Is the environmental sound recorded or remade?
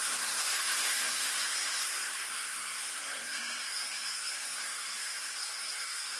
remade